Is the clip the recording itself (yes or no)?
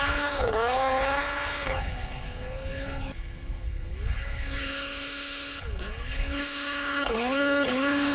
no